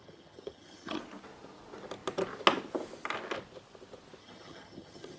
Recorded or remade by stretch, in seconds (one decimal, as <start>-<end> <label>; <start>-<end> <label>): 0.0-1.0 remade; 1.0-4.2 recorded; 4.2-5.2 remade